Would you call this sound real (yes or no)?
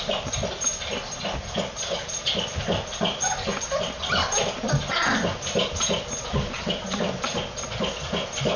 yes